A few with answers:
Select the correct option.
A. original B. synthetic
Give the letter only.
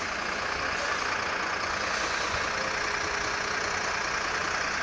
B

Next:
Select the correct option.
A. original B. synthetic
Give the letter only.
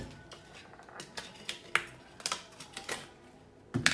A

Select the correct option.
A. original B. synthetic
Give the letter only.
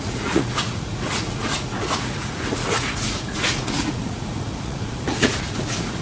B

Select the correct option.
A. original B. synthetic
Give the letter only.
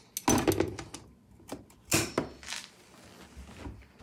A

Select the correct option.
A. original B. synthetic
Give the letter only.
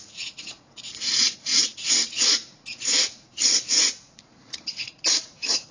B